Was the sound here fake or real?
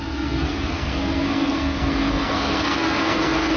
fake